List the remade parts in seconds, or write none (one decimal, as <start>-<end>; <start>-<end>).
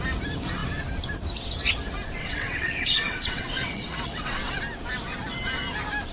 2.2-4.6